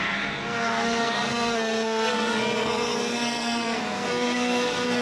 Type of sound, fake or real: fake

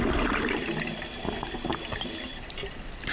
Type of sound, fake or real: real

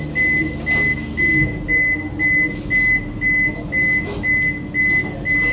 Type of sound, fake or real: real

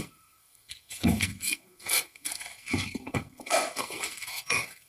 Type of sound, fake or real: fake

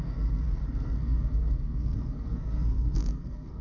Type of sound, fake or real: fake